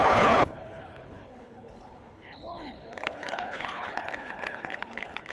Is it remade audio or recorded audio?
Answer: remade